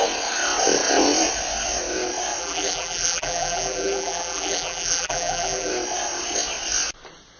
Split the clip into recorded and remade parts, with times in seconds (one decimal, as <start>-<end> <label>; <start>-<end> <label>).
0.0-2.4 recorded; 2.4-5.7 remade; 5.7-7.4 recorded